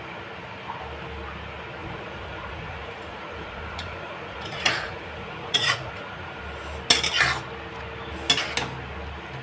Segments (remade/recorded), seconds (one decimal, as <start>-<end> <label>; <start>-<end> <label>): 0.0-1.8 recorded; 1.8-6.4 remade; 6.4-9.4 recorded